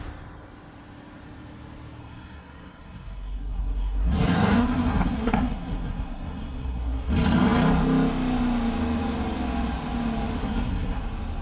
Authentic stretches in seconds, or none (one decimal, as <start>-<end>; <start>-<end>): 0.0-2.0; 7.1-10.4; 11.0-11.4